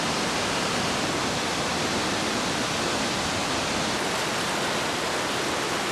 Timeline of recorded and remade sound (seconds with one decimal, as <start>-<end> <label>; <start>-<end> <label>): 0.0-5.9 recorded